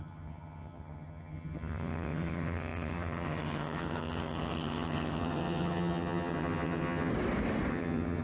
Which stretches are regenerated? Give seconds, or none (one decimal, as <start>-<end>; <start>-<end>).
0.0-7.1; 7.7-8.2